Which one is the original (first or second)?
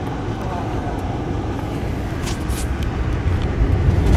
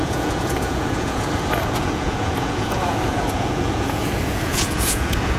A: first